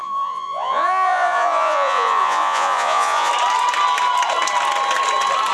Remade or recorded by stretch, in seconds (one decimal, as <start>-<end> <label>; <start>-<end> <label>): 0.0-3.3 remade; 3.3-5.5 recorded